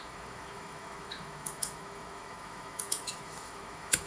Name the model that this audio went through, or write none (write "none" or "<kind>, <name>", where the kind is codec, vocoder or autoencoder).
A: autoencoder, DAC-VAE